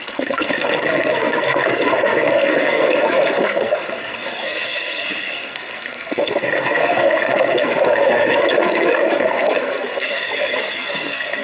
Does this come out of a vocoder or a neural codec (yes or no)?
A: yes